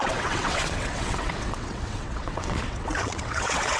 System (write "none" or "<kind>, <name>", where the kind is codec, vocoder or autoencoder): vocoder, WaveNeXt